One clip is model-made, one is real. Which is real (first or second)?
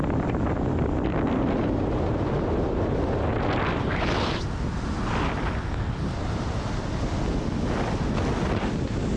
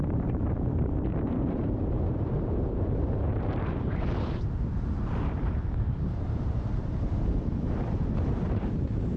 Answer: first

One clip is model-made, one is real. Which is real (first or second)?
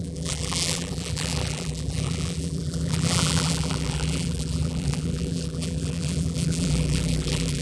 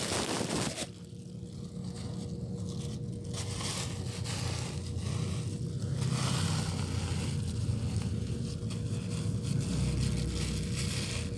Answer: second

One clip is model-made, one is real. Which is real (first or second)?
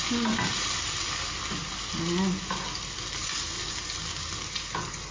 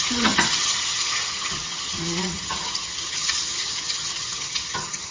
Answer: first